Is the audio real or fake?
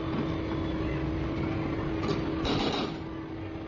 real